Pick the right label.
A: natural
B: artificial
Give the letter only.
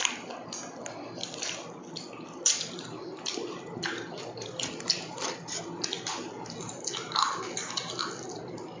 A